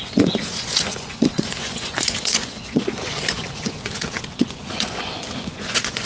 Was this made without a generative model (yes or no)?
no